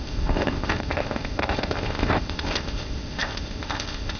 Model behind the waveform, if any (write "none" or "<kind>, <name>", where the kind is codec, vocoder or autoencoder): codec, ZipCodec